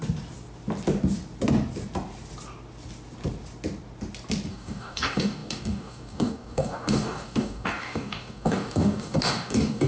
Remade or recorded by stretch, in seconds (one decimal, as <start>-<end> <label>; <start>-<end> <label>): 0.0-4.5 recorded; 4.5-9.9 remade